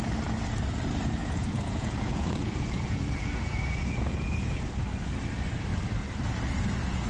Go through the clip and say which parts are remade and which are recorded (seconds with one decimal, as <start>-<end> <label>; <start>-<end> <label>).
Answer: 0.0-1.2 recorded; 1.2-4.7 remade; 4.7-7.1 recorded